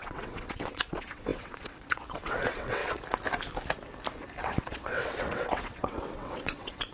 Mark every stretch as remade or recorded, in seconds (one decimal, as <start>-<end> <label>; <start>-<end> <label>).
0.0-2.8 remade; 2.8-4.4 recorded; 4.4-6.9 remade